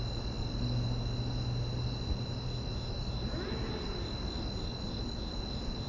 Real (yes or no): yes